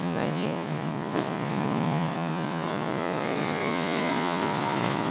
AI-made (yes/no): yes